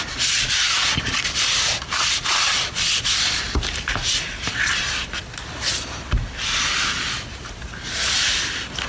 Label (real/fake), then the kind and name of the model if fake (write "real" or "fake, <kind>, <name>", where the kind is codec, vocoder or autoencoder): real